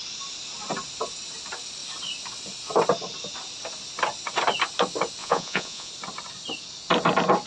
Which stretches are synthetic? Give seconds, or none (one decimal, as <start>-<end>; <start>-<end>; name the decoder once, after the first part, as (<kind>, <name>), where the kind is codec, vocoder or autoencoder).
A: 5.2-5.9 (vocoder, Vocos)